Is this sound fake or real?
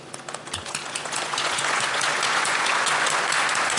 fake